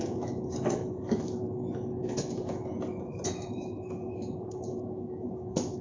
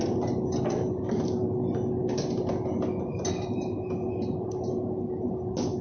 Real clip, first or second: second